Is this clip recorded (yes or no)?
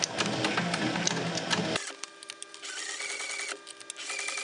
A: yes